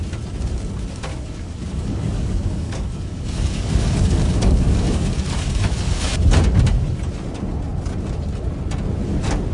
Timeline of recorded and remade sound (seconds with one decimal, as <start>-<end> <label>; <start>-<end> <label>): 0.0-1.1 recorded; 1.1-6.1 remade; 6.1-9.5 recorded